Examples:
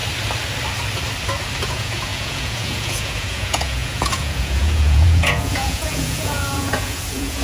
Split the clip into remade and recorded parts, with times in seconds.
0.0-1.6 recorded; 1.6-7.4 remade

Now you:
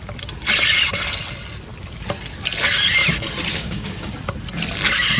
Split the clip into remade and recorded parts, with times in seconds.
0.0-3.5 recorded; 3.5-4.1 remade; 4.1-5.2 recorded

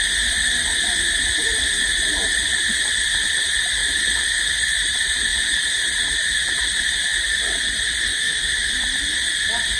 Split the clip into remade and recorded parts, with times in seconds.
0.0-8.1 recorded; 8.1-8.7 remade; 8.7-9.8 recorded

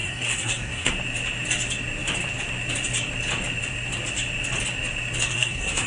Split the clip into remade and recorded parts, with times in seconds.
0.0-0.9 remade; 0.9-5.2 recorded; 5.2-5.9 remade

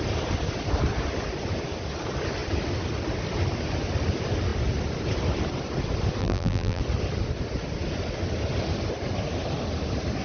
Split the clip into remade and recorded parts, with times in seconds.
0.0-6.2 recorded; 6.2-6.8 remade; 6.8-10.2 recorded

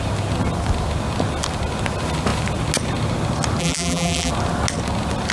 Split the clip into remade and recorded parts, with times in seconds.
0.0-3.6 recorded; 3.6-4.3 remade; 4.3-5.3 recorded

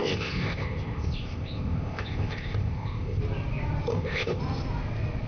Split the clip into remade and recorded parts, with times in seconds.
0.0-3.2 remade; 3.2-3.9 recorded; 3.9-4.4 remade; 4.4-5.3 recorded

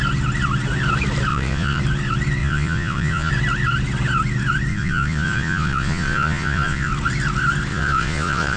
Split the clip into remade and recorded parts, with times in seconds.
0.0-1.3 recorded; 1.3-1.8 remade; 1.8-2.4 recorded; 2.4-3.3 remade; 3.3-4.7 recorded; 4.7-6.9 remade; 6.9-7.7 recorded; 7.7-8.6 remade